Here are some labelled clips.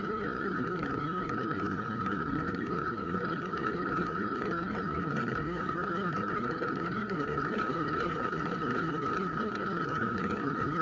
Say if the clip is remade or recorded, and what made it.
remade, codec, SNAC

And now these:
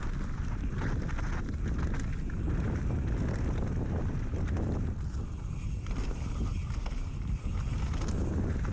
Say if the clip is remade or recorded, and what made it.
recorded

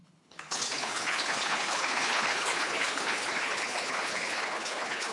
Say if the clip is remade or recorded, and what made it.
remade, codec, HILCodec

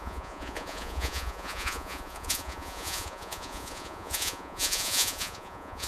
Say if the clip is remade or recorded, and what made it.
remade, vocoder, Vocos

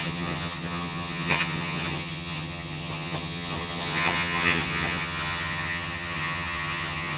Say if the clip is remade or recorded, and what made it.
remade, vocoder, HiFi-GAN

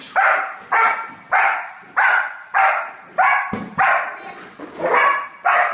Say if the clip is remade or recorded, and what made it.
recorded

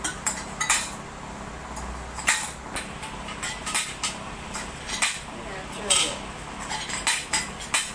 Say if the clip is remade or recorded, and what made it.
recorded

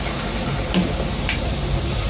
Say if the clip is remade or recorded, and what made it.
remade, vocoder, BigVGAN v2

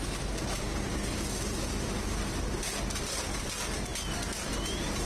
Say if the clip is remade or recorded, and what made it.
recorded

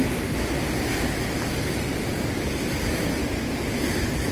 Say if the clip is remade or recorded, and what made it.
recorded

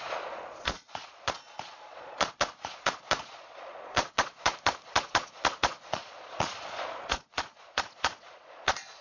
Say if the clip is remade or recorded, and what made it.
remade, vocoder, Vocos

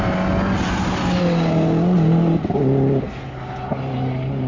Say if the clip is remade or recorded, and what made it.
recorded